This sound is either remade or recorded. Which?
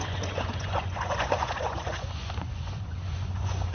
remade